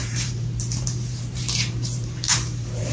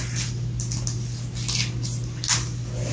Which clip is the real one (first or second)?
second